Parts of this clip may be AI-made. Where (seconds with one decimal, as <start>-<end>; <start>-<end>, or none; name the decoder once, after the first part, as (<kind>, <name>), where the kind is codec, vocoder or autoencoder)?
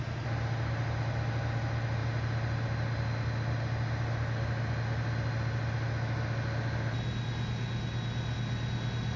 none